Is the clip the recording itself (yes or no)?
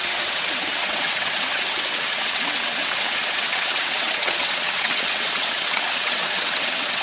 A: no